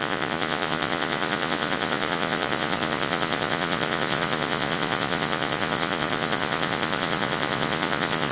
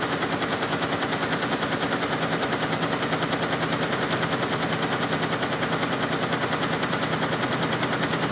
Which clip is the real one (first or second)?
second